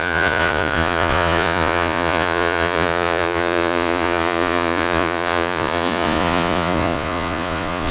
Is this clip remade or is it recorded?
remade